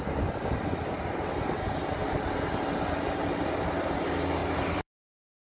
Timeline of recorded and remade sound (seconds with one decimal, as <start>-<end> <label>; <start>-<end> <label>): 0.0-4.4 recorded; 4.4-5.6 remade